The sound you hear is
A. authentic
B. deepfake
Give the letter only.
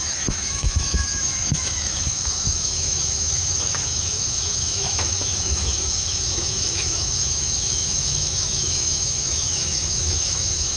B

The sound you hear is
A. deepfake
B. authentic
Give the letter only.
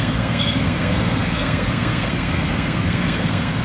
A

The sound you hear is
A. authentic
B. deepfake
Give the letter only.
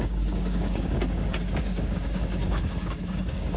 B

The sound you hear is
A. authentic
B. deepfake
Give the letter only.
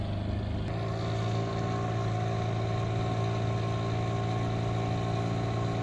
A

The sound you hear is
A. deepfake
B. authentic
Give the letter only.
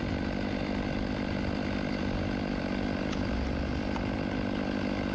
B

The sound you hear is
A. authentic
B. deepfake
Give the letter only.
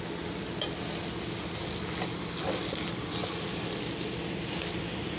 A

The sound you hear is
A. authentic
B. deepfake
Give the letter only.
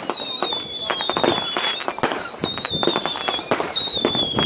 A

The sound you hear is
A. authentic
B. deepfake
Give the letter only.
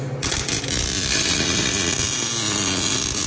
A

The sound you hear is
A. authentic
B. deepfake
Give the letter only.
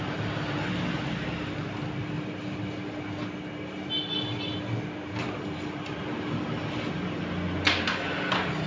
A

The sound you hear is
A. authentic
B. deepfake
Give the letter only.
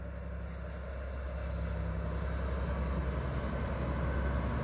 A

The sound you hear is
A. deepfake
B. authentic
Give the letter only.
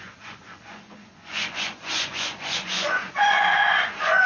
A